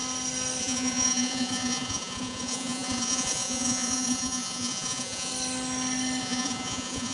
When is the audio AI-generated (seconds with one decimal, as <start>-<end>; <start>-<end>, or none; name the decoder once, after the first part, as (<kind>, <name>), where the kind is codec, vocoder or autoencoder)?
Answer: 0.6-5.3 (vocoder, Vocos); 6.2-7.1